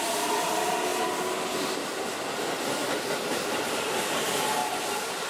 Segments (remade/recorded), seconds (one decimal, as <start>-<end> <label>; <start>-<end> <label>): 0.0-5.3 recorded